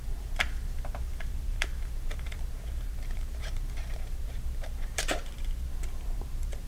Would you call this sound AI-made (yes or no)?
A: yes